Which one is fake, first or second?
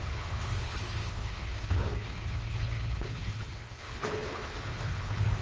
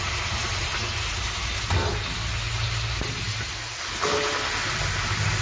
first